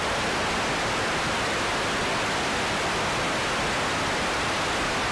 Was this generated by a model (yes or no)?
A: no